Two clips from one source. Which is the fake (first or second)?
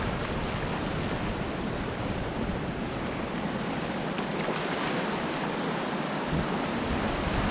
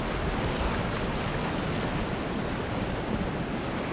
first